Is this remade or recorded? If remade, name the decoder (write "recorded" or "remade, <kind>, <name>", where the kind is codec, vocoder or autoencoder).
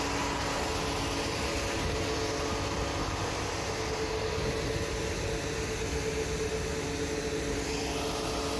recorded